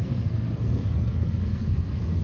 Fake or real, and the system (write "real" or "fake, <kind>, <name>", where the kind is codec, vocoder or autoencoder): fake, codec, SNAC